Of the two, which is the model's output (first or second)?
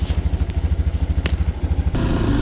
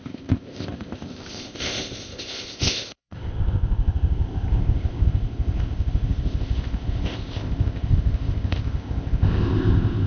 second